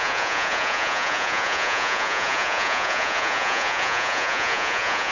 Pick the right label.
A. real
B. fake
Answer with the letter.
B